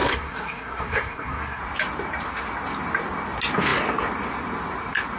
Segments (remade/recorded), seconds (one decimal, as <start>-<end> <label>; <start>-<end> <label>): 0.0-1.6 remade; 1.6-5.2 recorded